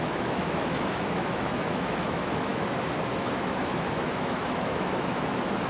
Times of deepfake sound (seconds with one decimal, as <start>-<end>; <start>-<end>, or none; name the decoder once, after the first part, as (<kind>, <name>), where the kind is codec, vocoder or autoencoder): 0.0-5.7 (autoencoder, DAC-VAE)